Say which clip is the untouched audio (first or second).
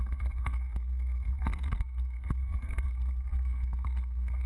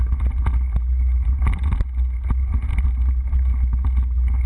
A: second